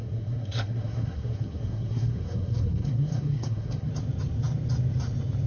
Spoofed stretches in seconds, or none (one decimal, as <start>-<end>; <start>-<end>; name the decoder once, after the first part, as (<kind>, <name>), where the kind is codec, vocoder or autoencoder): 0.0-3.9 (codec, SNAC)